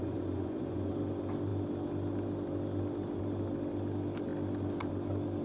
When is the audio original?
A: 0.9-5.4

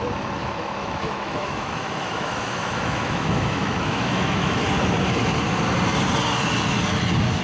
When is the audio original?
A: 0.0-0.4; 4.6-7.4

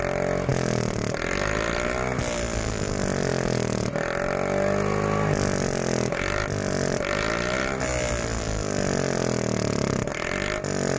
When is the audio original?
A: 0.0-11.0

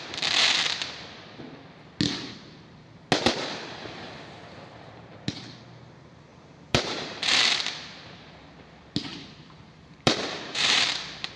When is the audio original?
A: 0.0-6.3; 7.6-9.1; 10.8-11.4

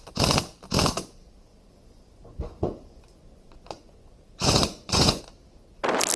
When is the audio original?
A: 0.0-1.5; 5.2-6.2

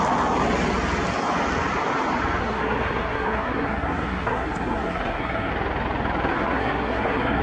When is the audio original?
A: 0.0-2.4; 5.5-6.3